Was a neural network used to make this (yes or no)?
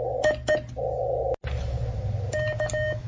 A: no